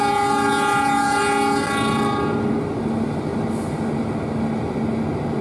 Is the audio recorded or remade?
recorded